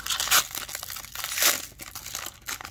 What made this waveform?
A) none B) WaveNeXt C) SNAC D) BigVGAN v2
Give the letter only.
A